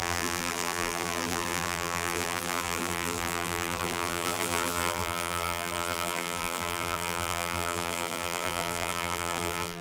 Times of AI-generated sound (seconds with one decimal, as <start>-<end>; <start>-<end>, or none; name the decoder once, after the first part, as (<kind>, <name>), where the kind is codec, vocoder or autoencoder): 0.0-9.8 (vocoder, BigVGAN v2)

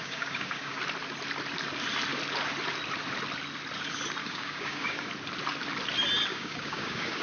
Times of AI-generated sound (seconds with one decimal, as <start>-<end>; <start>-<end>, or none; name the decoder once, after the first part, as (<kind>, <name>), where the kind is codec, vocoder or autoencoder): 0.0-0.8 (codec, DAC); 4.2-5.1; 6.3-7.2

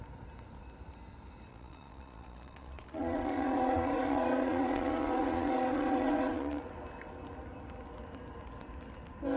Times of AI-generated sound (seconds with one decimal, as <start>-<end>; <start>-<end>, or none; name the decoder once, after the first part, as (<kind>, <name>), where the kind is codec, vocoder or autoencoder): 1.5-6.6 (vocoder, Vocos)